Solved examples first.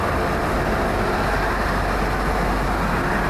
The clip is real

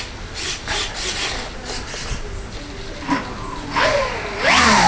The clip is real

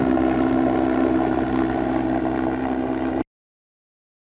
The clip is real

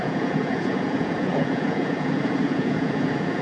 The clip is fake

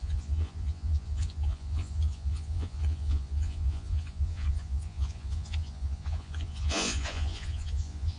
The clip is fake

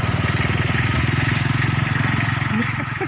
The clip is real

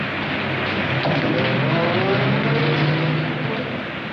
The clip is real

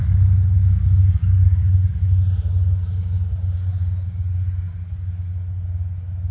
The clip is real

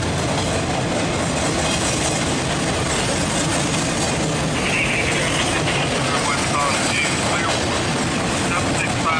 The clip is real